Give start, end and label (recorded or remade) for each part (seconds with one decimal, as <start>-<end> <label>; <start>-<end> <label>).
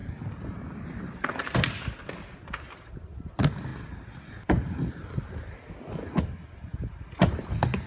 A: 0.0-7.9 recorded